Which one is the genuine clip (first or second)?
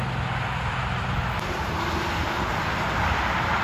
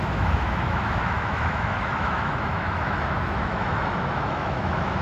first